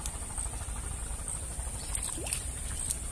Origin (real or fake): real